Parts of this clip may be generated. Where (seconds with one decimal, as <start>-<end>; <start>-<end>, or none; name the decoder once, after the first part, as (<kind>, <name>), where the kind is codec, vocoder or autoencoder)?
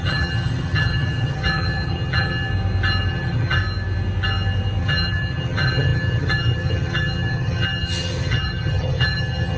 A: 0.0-2.5 (vocoder, HiFi-GAN); 3.1-3.6; 4.8-9.6